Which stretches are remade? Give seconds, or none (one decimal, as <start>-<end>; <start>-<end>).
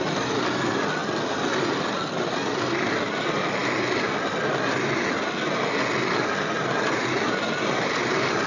none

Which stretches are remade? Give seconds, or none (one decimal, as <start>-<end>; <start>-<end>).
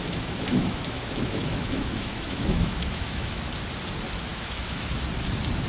0.0-3.4; 4.3-4.9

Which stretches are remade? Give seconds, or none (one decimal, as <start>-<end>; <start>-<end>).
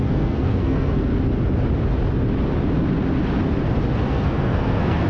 0.0-1.1; 3.9-5.1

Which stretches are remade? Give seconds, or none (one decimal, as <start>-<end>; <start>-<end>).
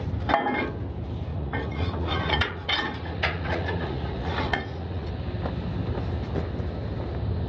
1.3-5.1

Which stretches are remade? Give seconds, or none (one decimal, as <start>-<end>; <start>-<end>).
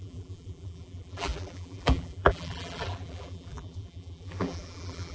0.0-5.1